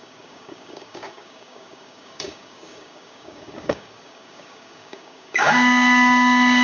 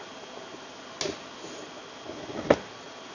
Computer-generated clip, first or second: first